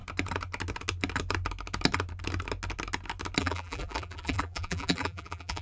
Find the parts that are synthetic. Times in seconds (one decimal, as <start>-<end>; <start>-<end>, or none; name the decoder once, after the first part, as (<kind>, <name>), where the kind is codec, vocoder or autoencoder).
3.4-5.6 (vocoder, BigVGAN v2)

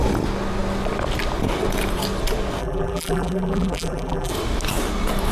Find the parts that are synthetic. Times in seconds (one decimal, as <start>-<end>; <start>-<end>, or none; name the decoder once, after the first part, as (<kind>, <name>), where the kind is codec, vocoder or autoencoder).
2.6-4.3 (vocoder, BigVGAN v2)